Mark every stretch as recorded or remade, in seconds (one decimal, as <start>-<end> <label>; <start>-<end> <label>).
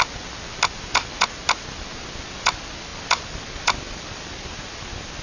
0.0-5.2 recorded